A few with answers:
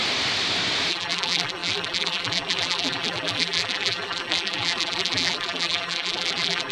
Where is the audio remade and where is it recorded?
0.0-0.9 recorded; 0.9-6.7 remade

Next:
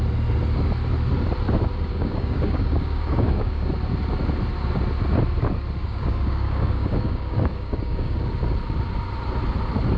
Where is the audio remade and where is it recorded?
0.0-1.9 recorded; 1.9-3.7 remade; 3.7-5.8 recorded; 5.8-8.3 remade; 8.3-10.0 recorded

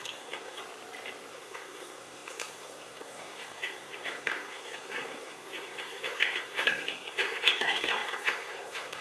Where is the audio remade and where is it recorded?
0.0-0.6 remade; 0.6-1.3 recorded; 1.3-9.0 remade

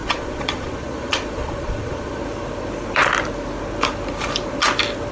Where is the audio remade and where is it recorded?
0.0-2.2 remade; 2.2-5.1 recorded